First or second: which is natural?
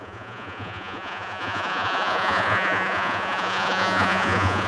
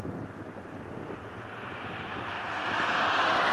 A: second